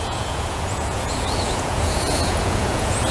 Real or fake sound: fake